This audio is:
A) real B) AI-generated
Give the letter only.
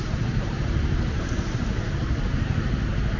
B